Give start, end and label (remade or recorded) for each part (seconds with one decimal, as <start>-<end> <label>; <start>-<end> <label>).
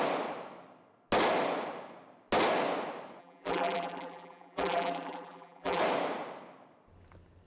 0.0-3.2 recorded; 3.2-5.8 remade; 5.8-7.5 recorded